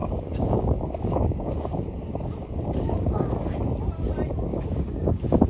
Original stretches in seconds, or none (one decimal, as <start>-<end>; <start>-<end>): 3.3-4.5